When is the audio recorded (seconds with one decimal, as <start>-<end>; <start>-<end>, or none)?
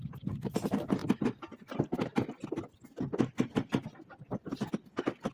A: 0.0-5.3